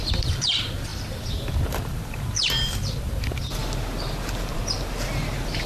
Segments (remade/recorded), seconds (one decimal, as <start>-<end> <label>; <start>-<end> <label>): 0.0-3.6 remade; 3.6-5.3 recorded; 5.3-5.7 remade